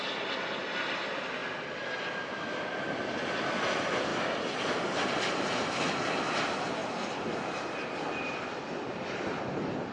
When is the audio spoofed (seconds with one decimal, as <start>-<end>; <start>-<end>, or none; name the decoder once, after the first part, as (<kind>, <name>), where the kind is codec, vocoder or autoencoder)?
0.0-1.4 (vocoder, BigVGAN v2); 2.7-4.1; 6.2-6.8; 8.1-9.9